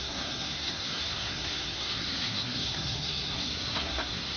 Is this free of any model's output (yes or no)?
no